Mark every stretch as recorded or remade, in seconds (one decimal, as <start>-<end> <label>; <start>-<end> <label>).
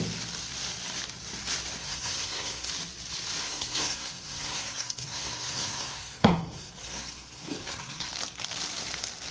0.0-1.8 recorded; 1.8-2.7 remade; 2.7-3.4 recorded; 3.4-8.1 remade; 8.1-9.3 recorded